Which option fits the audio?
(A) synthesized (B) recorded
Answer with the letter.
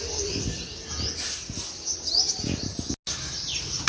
B